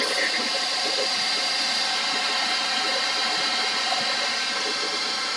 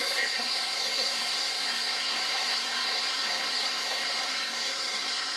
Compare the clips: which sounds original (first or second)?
first